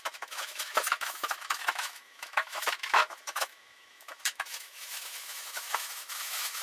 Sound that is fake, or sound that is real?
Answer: fake